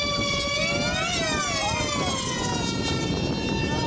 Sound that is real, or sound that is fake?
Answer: real